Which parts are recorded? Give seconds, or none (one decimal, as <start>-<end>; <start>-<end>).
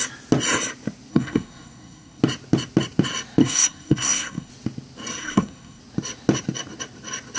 0.0-1.1; 2.2-3.4; 4.5-5.2; 5.8-7.4